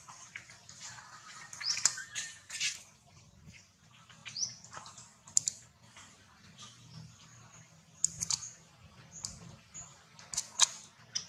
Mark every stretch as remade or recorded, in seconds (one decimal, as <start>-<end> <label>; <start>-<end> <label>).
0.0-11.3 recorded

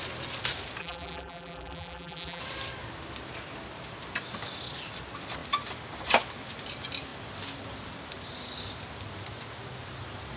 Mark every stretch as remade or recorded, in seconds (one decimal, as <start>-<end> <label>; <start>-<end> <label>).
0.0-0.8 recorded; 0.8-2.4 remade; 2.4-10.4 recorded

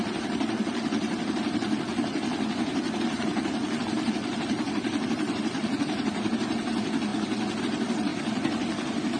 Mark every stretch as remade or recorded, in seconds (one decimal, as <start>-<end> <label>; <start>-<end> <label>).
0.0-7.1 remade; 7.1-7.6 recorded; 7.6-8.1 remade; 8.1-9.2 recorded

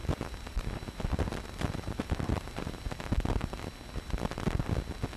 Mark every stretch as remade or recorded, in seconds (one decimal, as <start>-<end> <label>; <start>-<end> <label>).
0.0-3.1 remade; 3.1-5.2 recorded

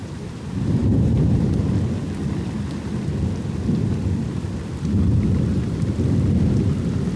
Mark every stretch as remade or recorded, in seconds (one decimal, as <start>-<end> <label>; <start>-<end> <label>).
0.0-1.6 remade; 1.6-7.2 recorded

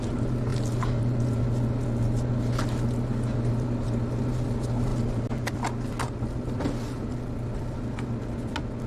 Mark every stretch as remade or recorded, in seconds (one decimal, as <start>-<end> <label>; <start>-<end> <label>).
0.0-8.9 recorded

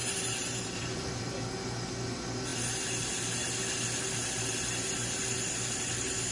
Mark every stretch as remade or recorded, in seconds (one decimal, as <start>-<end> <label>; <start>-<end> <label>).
0.0-1.2 remade; 1.2-6.3 recorded

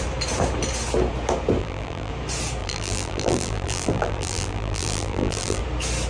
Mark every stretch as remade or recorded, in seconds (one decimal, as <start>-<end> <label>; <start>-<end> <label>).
0.0-1.6 recorded; 1.6-2.1 remade; 2.1-2.6 recorded; 2.6-5.6 remade; 5.6-6.1 recorded